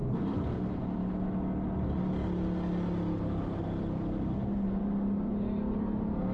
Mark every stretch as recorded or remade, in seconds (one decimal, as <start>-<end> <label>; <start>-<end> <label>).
0.0-6.3 recorded